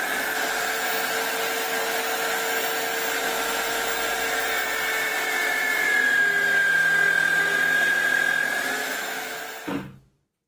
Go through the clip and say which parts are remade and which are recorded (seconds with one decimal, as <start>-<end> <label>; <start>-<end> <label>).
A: 0.0-8.8 recorded; 8.8-9.4 remade; 9.4-10.5 recorded